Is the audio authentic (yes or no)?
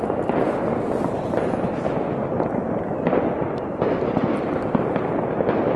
yes